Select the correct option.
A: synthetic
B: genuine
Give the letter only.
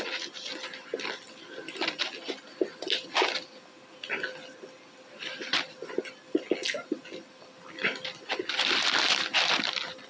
B